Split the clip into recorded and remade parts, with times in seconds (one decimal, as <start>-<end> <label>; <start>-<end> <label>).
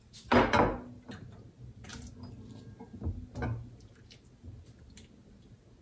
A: 0.0-5.8 recorded